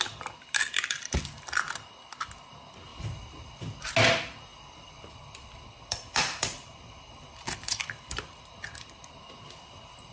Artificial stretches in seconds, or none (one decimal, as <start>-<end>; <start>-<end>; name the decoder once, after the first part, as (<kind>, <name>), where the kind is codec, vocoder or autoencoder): 0.6-1.2 (vocoder, BigVGAN v2); 2.9-3.9; 4.5-9.1